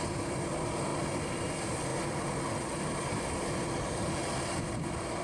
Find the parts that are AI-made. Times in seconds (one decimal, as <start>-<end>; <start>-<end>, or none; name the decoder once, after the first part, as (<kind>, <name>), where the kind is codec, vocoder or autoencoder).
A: 0.0-5.2 (vocoder, BigVGAN v2)